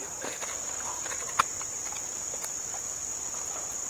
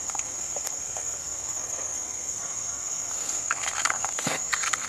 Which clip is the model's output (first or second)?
second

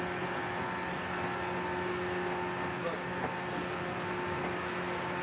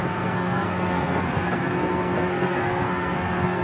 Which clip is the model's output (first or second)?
second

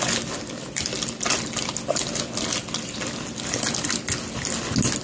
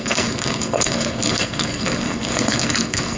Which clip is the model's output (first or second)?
second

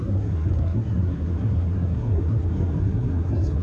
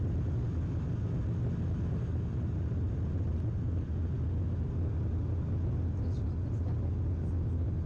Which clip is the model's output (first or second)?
first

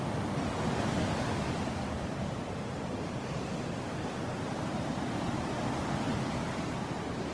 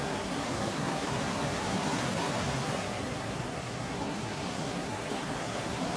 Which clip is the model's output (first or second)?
second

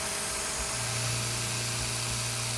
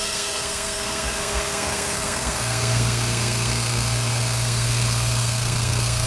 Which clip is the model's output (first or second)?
second